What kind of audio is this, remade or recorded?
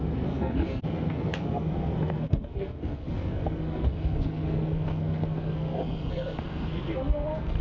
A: remade